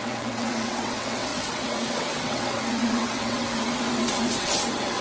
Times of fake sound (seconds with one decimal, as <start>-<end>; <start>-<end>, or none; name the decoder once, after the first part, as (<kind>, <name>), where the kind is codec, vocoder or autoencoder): 0.0-5.0 (vocoder, WaveNeXt)